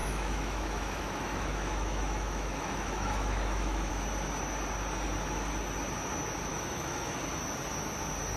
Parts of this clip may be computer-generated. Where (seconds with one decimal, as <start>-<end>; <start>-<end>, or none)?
0.0-3.9; 6.5-7.2